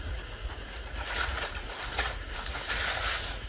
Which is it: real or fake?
fake